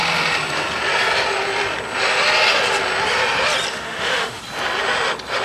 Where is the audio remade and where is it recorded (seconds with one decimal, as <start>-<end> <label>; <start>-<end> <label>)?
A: 0.0-3.7 recorded; 3.7-4.4 remade; 4.4-5.4 recorded